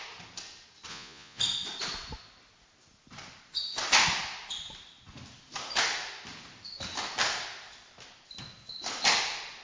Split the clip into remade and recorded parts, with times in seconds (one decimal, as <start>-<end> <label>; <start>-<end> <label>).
0.0-0.9 recorded; 0.9-1.4 remade; 1.4-9.6 recorded